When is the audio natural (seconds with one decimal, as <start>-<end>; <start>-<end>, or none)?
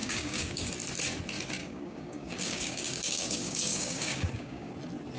0.7-1.6; 4.7-5.2